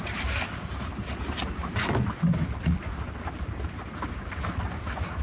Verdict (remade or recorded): recorded